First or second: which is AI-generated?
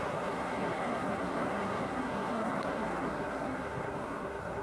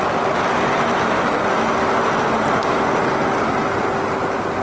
first